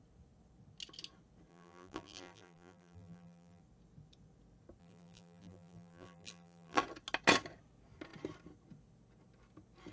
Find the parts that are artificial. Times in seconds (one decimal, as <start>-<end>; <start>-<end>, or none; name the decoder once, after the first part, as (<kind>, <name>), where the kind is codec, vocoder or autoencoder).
1.5-3.6 (vocoder, BigVGAN v2); 4.8-6.8